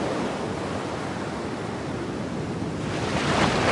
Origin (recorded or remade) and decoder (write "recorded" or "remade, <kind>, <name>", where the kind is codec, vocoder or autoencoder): remade, vocoder, BigVGAN v2